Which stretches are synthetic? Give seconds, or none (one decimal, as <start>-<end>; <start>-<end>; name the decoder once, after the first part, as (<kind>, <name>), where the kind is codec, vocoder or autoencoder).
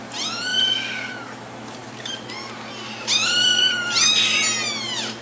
none